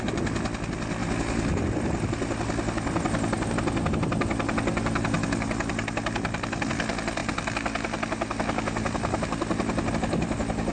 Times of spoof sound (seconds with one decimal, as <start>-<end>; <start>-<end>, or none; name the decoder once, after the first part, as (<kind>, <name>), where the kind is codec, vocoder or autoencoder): none